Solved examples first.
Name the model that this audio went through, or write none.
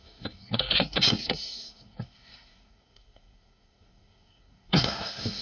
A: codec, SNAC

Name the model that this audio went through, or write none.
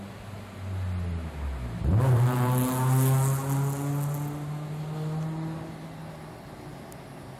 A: none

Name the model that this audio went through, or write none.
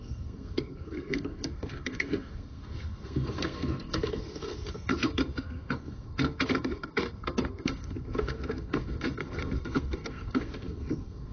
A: codec, SNAC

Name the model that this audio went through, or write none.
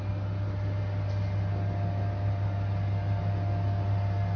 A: none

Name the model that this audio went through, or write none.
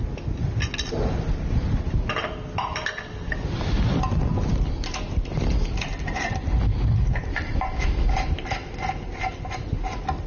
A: none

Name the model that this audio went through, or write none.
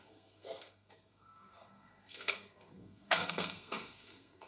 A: codec, SNAC